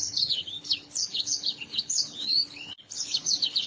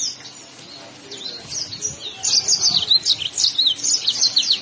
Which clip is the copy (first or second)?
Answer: first